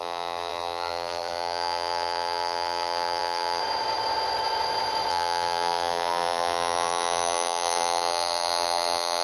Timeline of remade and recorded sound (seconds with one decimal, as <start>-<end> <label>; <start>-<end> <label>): 0.0-3.6 remade; 3.6-5.1 recorded; 5.1-9.2 remade